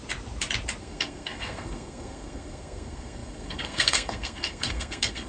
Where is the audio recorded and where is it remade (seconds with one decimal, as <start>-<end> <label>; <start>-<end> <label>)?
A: 0.0-0.8 recorded; 0.8-5.3 remade